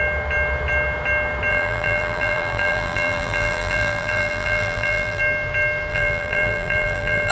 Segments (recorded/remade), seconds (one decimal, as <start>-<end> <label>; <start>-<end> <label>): 0.0-1.5 recorded; 1.5-5.2 remade; 5.2-5.9 recorded; 5.9-7.3 remade